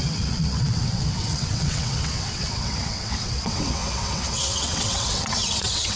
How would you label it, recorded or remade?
remade